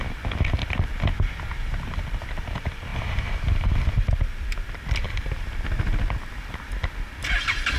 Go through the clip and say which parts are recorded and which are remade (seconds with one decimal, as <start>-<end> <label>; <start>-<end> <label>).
0.0-7.8 recorded